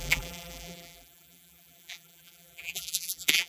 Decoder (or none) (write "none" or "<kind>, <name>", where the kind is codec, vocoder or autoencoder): vocoder, BigVGAN v2